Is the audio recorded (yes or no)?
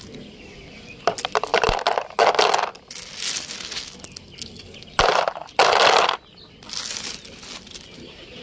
yes